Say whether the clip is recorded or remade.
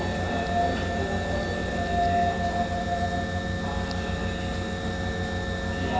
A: recorded